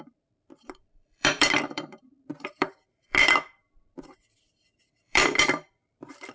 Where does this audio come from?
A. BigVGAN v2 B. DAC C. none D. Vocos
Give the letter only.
A